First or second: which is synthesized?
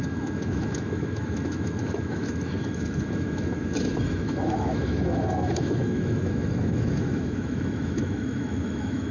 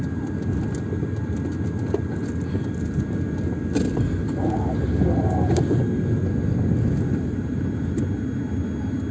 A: first